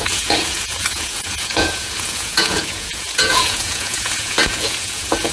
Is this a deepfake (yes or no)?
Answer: yes